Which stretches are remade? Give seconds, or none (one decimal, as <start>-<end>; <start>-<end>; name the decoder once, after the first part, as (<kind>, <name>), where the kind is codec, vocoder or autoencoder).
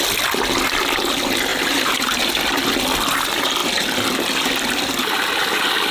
1.5-2.7 (vocoder, BigVGAN v2); 3.6-4.6